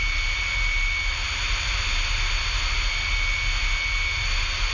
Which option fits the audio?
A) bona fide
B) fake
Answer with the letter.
A